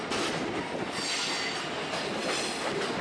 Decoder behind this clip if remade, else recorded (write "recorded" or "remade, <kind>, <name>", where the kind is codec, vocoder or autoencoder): recorded